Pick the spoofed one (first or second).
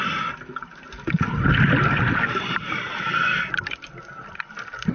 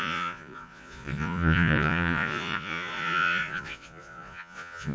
second